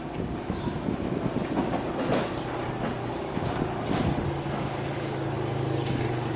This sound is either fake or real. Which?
real